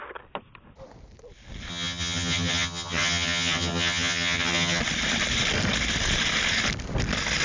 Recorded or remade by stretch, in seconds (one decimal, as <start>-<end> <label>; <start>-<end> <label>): 0.0-1.7 recorded; 1.7-4.8 remade; 4.8-7.4 recorded